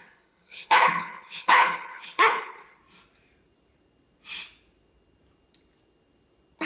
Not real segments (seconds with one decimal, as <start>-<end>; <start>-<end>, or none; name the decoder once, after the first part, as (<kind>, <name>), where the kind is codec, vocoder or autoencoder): 0.0-2.8 (codec, HILCodec)